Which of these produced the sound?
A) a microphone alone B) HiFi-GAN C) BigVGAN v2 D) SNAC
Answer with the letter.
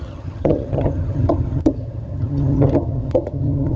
B